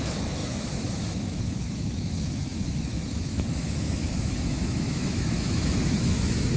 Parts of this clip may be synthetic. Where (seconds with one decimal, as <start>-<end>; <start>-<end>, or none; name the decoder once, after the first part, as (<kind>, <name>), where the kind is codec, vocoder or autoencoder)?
0.0-6.6 (autoencoder, DAC-VAE)